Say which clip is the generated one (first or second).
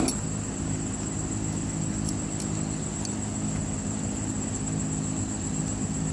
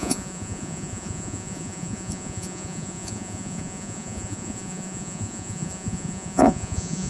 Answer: second